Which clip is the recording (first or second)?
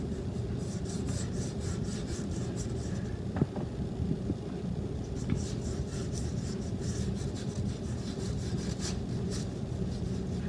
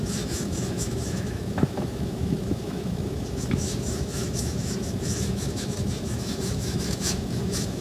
first